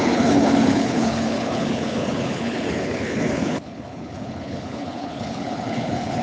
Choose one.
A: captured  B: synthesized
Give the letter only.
B